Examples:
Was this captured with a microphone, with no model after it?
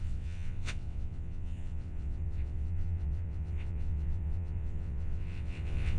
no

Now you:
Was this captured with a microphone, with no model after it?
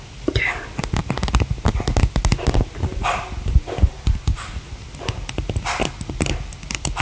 yes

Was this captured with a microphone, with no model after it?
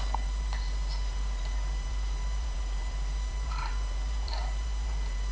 no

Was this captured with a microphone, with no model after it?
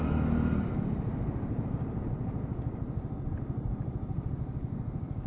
yes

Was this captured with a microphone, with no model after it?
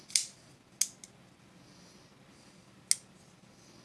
yes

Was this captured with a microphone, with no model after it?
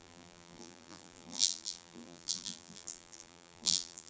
no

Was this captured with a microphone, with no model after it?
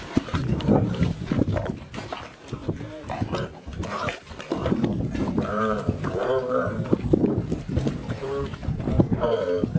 no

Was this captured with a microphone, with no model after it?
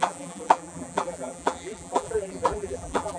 no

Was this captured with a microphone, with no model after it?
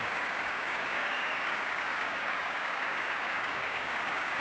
no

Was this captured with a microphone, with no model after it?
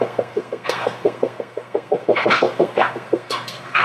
no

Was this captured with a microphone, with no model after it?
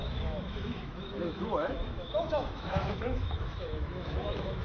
no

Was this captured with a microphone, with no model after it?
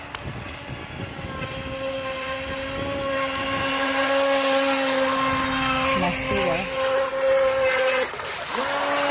yes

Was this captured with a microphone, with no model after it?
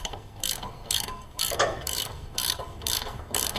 no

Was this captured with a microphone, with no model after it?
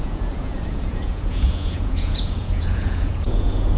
no